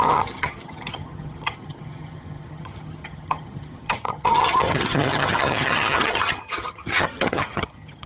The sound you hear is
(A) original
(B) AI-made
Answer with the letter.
B